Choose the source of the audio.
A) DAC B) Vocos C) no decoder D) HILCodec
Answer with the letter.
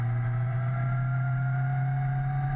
C